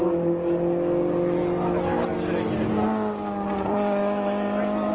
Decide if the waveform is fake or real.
real